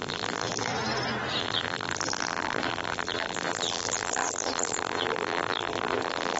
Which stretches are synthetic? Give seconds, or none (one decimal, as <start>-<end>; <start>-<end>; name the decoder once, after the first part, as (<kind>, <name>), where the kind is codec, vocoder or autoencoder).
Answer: 0.0-0.7 (vocoder, BigVGAN v2); 1.4-6.4